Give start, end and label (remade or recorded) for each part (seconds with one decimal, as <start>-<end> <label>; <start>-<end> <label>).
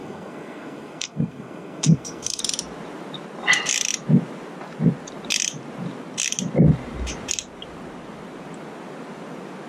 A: 0.0-2.4 remade; 2.4-9.7 recorded